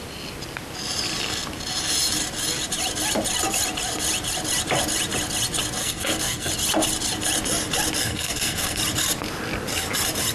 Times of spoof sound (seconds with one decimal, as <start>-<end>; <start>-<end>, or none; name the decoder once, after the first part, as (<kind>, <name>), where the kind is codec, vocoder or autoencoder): 5.8-6.5 (codec, SNAC); 8.0-8.8